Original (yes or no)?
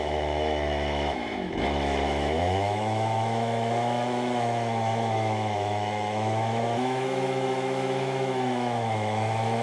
no